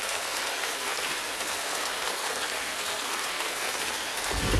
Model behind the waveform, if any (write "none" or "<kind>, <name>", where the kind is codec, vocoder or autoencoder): codec, SNAC